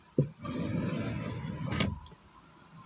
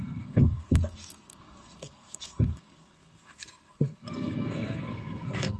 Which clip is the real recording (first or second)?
first